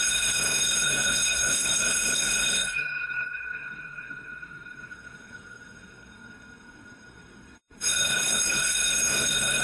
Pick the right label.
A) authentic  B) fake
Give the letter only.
B